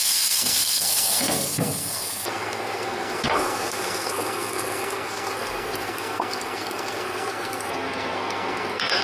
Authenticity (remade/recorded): remade